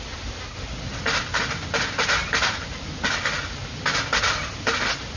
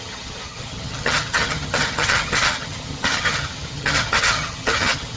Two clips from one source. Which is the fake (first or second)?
second